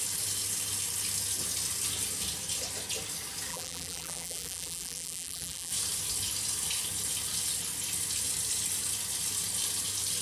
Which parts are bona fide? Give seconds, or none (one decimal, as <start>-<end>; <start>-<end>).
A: 0.0-3.5; 5.7-10.2